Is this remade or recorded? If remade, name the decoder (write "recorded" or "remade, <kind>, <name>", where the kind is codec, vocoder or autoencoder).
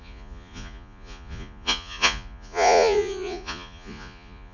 remade, vocoder, Vocos